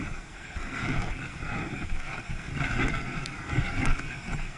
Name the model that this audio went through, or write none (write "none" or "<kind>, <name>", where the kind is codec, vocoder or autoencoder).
codec, SNAC